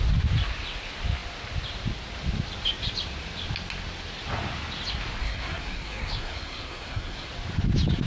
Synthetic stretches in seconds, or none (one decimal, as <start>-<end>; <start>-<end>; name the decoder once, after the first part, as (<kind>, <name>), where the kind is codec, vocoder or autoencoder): 5.2-7.3 (codec, SNAC)